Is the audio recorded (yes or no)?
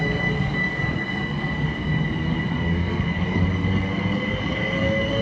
no